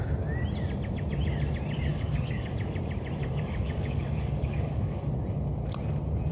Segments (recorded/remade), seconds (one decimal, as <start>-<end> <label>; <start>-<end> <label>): 0.0-1.9 recorded; 1.9-2.5 remade; 2.5-3.2 recorded; 3.2-5.1 remade; 5.1-6.3 recorded